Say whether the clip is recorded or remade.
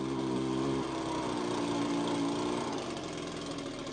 recorded